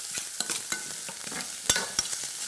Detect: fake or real real